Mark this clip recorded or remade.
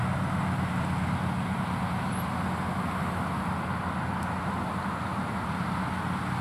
recorded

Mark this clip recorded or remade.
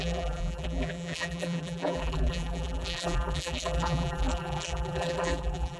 remade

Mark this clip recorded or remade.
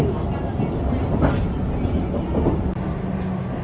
recorded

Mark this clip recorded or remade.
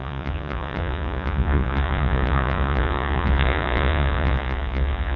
remade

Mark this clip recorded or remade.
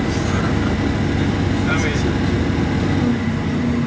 recorded